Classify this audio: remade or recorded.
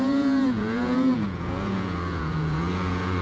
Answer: remade